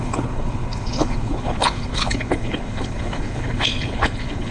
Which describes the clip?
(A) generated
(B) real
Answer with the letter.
A